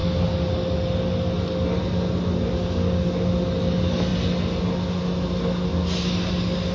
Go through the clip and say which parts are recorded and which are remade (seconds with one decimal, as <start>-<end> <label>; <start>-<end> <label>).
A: 0.0-6.7 recorded